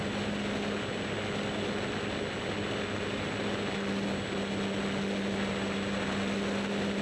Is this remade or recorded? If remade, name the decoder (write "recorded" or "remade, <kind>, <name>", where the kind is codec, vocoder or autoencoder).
recorded